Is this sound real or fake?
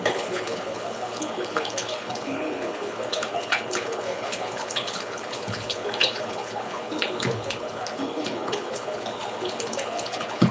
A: fake